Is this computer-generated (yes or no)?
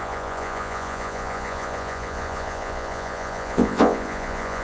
yes